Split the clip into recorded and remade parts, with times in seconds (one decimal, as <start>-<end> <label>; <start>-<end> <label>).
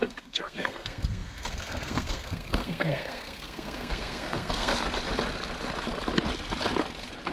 0.0-4.7 remade; 4.7-7.3 recorded